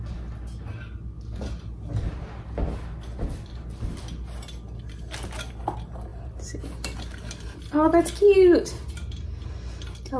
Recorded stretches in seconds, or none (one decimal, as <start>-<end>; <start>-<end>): 0.0-10.2